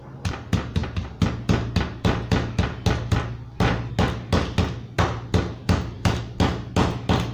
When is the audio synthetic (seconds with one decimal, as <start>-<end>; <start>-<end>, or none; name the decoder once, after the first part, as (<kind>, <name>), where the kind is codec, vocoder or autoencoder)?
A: 5.6-6.2 (vocoder, BigVGAN v2)